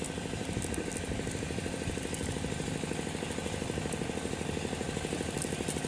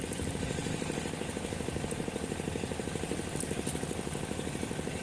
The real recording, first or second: first